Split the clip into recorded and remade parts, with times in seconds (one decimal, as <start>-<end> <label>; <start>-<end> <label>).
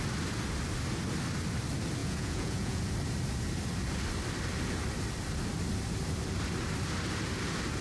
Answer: 0.0-2.0 recorded; 2.0-2.8 remade; 2.8-7.8 recorded